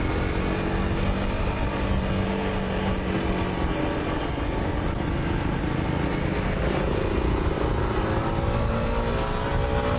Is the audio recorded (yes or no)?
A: yes